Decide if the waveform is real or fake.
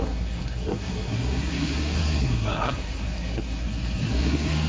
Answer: fake